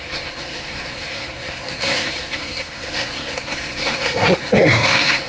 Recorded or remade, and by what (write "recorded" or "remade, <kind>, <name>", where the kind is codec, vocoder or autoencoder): remade, codec, SNAC